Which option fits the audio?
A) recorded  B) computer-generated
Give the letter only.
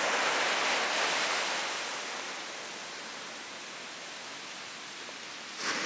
A